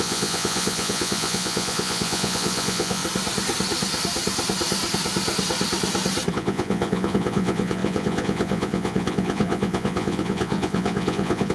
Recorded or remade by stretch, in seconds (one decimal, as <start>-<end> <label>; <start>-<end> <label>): 0.0-3.0 remade; 3.0-6.3 recorded; 6.3-11.5 remade